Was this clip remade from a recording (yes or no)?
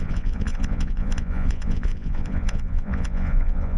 yes